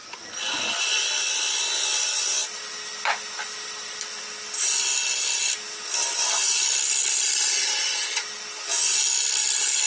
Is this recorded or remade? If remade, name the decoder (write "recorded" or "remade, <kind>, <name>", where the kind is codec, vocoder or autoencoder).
recorded